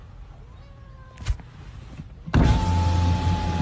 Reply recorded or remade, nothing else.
recorded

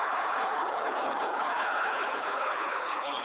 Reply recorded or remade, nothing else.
remade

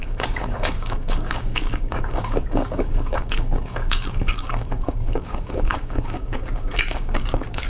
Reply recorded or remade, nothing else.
remade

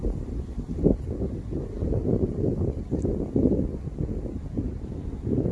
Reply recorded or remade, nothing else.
recorded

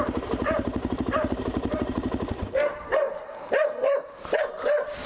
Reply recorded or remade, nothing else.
remade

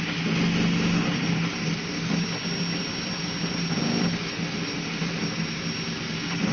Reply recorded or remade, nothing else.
recorded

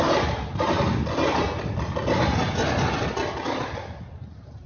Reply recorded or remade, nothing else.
recorded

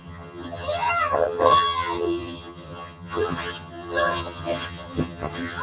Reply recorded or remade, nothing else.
remade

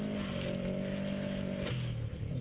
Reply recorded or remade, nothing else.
recorded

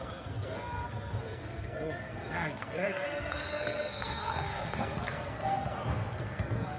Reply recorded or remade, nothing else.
remade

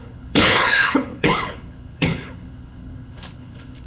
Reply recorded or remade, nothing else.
remade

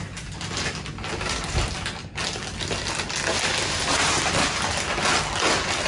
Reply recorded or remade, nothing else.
recorded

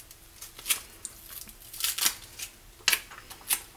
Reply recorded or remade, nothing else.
recorded